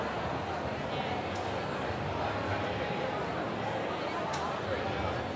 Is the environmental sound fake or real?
real